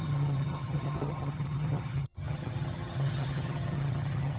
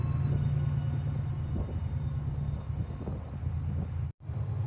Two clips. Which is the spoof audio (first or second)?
first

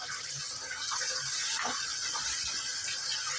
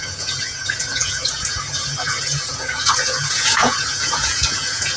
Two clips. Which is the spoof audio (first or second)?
second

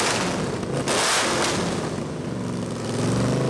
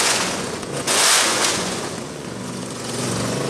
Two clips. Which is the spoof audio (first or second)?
second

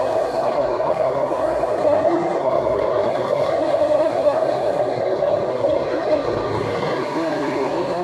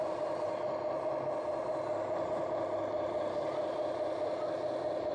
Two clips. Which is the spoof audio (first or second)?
first